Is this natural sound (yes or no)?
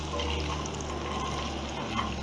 yes